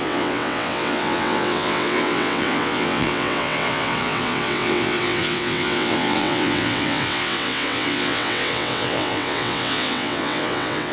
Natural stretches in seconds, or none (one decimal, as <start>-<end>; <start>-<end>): none

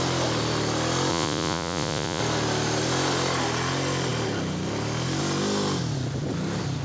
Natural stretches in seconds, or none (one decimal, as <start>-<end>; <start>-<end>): 0.0-1.1; 2.2-6.8